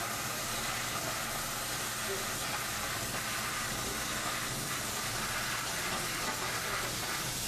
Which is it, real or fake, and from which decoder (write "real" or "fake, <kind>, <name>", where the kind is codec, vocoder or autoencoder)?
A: real